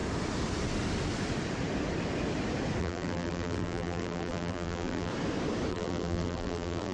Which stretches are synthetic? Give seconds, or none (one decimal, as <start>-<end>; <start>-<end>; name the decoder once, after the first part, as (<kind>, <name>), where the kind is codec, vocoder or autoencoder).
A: 2.8-5.1 (vocoder, BigVGAN v2); 5.7-6.9